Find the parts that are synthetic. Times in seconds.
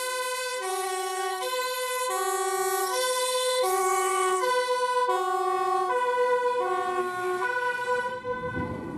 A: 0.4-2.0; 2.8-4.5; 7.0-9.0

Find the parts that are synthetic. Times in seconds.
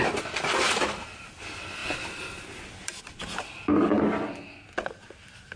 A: none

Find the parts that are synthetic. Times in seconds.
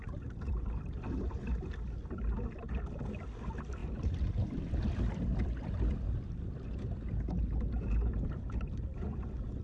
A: 0.0-1.4; 3.8-6.3; 8.1-9.6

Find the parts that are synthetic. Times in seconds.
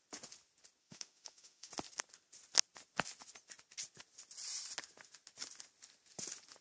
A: 0.8-1.7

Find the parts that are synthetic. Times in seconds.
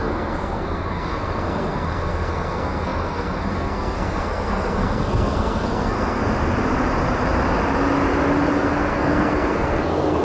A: 0.0-6.3; 8.5-10.2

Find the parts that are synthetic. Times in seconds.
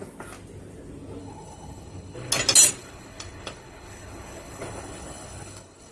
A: 1.2-2.3; 2.8-5.9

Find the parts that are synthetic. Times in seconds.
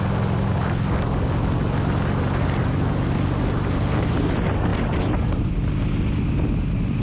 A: none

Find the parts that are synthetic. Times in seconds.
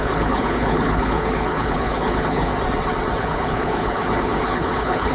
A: 0.0-2.5; 3.2-5.1